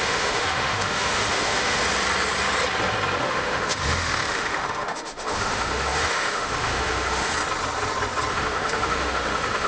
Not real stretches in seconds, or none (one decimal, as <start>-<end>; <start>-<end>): 0.0-1.8; 3.2-7.3; 8.3-9.7